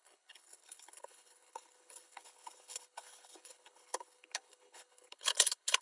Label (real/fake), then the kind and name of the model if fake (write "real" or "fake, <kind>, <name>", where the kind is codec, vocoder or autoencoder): fake, codec, HILCodec